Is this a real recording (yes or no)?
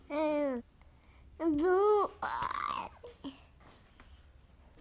yes